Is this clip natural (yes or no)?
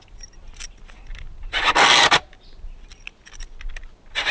yes